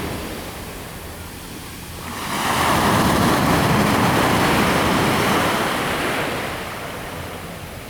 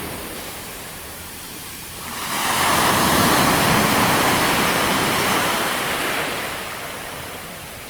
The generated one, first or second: second